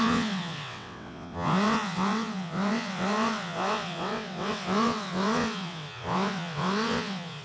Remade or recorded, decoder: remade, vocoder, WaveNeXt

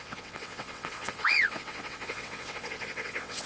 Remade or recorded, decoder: remade, vocoder, WaveNeXt